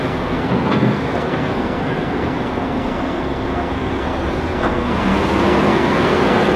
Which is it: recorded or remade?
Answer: remade